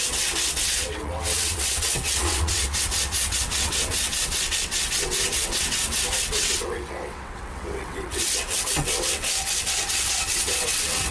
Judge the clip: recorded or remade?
remade